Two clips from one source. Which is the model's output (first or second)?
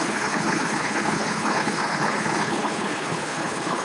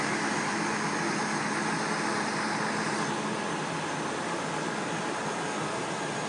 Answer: first